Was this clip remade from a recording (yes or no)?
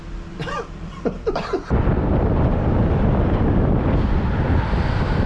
yes